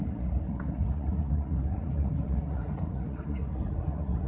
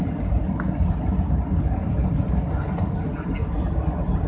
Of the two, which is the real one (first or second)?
second